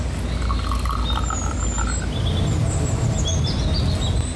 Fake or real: real